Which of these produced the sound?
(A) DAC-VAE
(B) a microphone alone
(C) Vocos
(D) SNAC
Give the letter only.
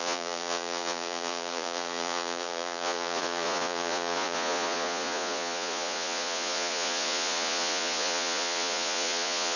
C